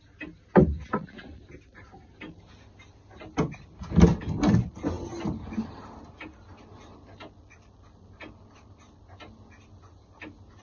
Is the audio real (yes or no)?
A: yes